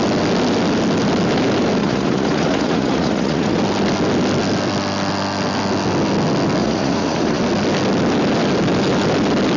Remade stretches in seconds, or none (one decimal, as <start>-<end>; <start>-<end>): 1.8-3.6; 6.6-7.4